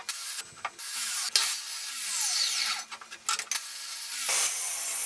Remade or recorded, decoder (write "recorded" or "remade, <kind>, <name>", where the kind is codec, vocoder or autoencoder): recorded